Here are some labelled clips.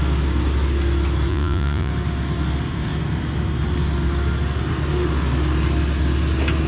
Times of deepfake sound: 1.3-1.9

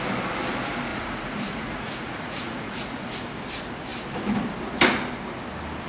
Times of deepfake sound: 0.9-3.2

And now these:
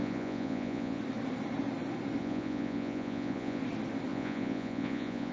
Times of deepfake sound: 0.0-1.0; 2.2-3.6; 4.1-5.3

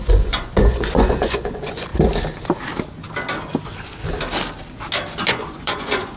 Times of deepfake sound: 0.0-1.9; 5.2-6.2